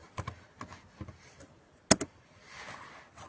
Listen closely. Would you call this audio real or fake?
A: real